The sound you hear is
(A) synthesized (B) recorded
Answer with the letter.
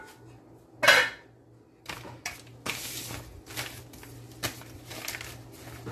B